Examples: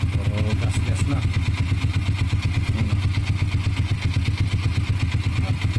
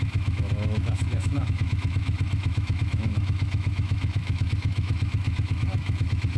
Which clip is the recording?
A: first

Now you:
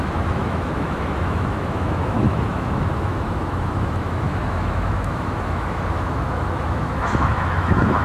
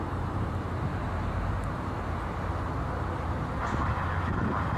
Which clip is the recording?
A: second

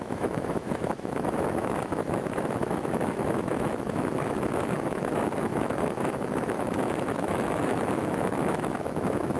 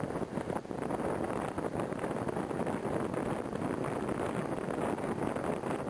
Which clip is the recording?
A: second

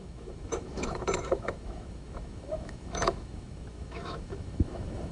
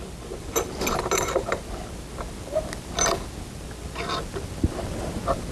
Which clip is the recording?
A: second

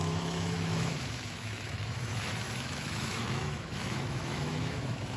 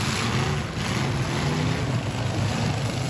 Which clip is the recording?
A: second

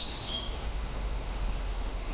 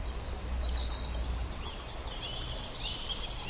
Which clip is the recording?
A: second